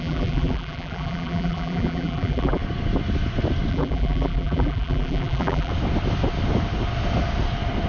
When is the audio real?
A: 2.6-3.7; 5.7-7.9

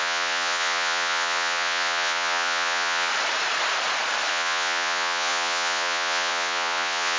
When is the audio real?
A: 3.1-4.3

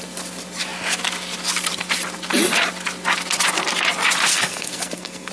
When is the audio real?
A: 0.0-4.3

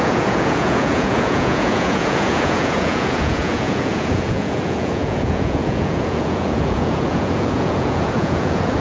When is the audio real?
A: none

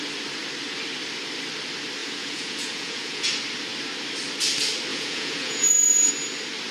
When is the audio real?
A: 0.0-2.0; 3.3-4.9; 6.1-6.7

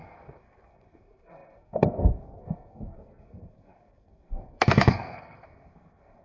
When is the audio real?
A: none